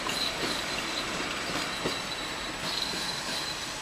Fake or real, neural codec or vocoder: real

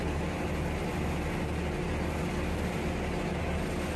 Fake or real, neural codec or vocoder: real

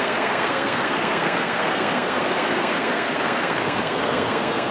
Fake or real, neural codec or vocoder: fake, codec, SNAC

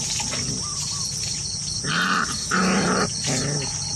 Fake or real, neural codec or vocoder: real